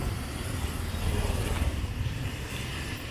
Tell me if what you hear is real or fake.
fake